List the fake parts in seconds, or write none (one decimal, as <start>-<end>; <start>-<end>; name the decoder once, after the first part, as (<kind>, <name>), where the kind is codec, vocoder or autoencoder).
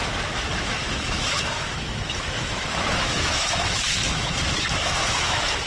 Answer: 0.6-5.7 (autoencoder, DAC-VAE)